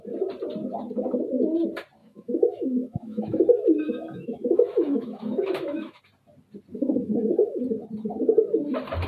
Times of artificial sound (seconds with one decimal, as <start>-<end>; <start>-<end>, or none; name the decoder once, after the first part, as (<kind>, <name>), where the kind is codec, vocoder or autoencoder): 2.0-6.0 (autoencoder, DAC-VAE); 6.7-7.6